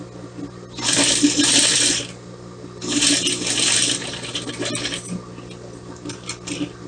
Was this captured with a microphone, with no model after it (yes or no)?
yes